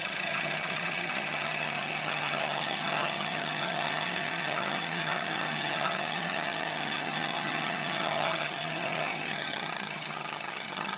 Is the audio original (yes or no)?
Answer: no